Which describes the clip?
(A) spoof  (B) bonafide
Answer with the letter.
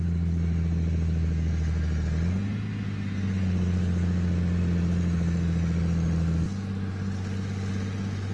B